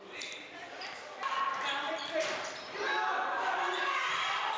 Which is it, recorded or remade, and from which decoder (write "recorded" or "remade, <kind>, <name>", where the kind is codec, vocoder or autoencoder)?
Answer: remade, vocoder, BigVGAN v2